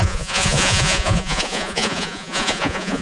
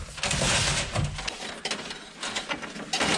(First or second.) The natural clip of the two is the second